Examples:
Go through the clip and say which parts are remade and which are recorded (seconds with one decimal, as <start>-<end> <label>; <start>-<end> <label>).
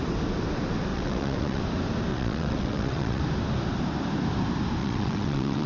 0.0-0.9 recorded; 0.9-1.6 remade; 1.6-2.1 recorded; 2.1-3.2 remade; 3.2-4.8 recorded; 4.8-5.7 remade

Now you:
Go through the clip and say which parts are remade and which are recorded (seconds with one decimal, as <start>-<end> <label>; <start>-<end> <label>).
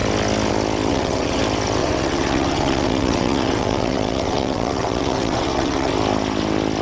0.0-0.9 recorded; 0.9-1.4 remade; 1.4-1.8 recorded; 1.8-5.9 remade; 5.9-6.8 recorded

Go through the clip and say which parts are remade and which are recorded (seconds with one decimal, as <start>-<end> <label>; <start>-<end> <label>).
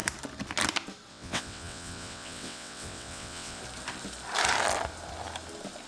0.0-1.1 recorded; 1.1-3.6 remade; 3.6-5.9 recorded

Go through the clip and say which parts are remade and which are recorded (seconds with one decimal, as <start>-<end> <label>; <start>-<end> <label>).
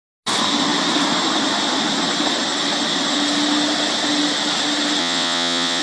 0.0-5.0 recorded; 5.0-5.8 remade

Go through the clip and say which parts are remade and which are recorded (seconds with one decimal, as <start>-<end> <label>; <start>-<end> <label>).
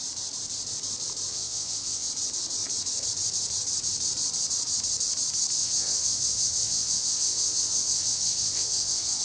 0.0-1.3 recorded; 1.3-2.1 remade; 2.1-5.6 recorded; 5.6-9.2 remade